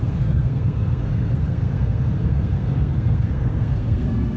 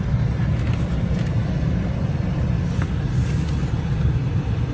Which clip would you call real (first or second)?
second